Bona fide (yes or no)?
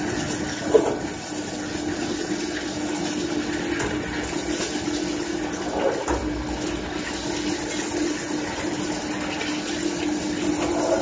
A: yes